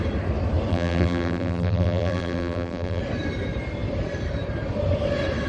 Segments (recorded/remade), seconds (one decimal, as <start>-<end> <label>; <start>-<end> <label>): 0.0-0.7 recorded; 0.7-3.0 remade; 3.0-5.5 recorded